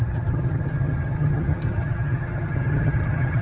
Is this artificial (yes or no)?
yes